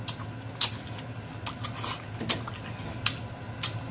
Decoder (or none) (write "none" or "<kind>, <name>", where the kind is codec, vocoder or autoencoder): none